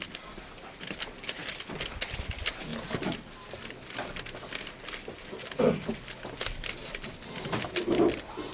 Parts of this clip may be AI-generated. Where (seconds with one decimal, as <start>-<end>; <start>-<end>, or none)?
none